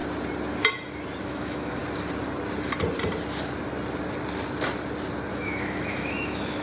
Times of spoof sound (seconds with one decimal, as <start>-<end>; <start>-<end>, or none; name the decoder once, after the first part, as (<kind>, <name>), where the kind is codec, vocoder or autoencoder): 1.2-1.8 (autoencoder, DAC-VAE); 5.3-6.6